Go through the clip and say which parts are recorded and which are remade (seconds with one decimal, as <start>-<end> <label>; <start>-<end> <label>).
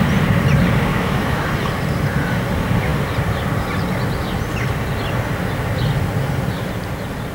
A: 0.0-0.9 recorded; 0.9-1.4 remade; 1.4-7.3 recorded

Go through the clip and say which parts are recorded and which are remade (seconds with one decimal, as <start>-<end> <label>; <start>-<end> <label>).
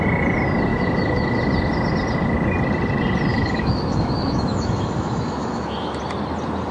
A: 0.0-0.7 recorded; 0.7-1.4 remade; 1.4-3.3 recorded; 3.3-6.0 remade; 6.0-6.7 recorded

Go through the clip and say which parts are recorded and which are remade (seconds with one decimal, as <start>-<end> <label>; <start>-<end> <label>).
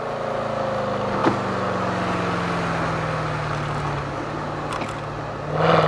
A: 0.0-5.9 recorded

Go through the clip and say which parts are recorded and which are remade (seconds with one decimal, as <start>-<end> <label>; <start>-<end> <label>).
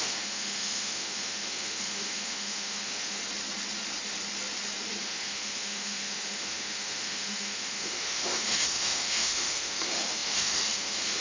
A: 0.0-3.2 remade; 3.2-5.0 recorded; 5.0-11.2 remade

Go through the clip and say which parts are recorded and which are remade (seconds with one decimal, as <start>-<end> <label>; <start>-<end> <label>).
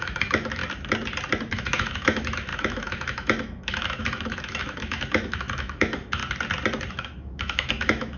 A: 0.0-0.6 remade; 0.6-1.5 recorded; 1.5-6.2 remade; 6.2-6.9 recorded; 6.9-8.2 remade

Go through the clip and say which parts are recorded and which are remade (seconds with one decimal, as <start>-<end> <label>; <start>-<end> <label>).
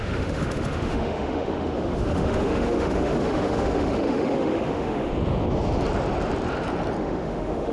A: 0.0-5.1 remade; 5.1-7.0 recorded; 7.0-7.7 remade